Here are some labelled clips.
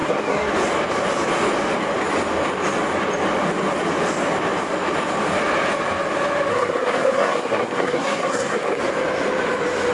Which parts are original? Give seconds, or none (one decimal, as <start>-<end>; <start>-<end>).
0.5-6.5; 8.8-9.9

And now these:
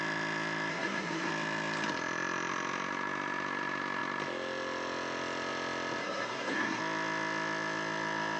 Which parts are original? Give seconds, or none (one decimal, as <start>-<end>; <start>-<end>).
0.0-0.7; 1.3-6.0; 6.8-8.4

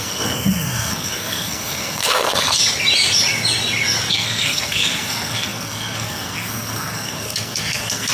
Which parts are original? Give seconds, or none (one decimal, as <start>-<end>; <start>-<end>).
2.6-4.1

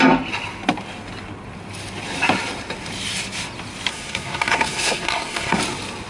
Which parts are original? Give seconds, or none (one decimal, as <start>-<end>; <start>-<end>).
0.0-3.9; 5.6-6.1

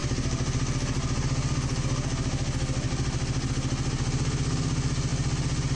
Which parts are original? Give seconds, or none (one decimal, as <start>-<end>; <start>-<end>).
0.0-5.8